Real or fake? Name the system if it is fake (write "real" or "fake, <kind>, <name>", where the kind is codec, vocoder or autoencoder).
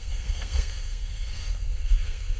fake, codec, SNAC